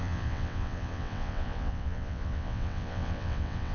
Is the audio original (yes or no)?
no